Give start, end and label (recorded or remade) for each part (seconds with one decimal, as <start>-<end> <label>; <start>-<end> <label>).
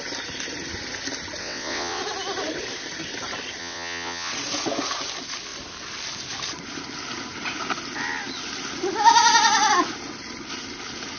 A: 0.0-1.4 recorded; 1.4-2.0 remade; 2.0-3.6 recorded; 3.6-4.3 remade; 4.3-11.2 recorded